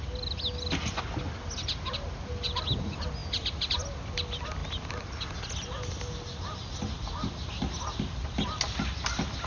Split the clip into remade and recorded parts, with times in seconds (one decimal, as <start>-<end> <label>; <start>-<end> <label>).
0.0-9.5 recorded